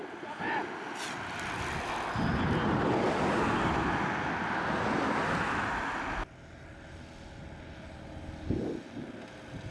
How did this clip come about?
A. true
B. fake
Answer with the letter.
A